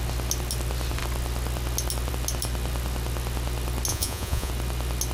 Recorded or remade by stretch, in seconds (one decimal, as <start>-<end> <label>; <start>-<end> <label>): 0.0-3.9 recorded; 3.9-4.5 remade; 4.5-5.1 recorded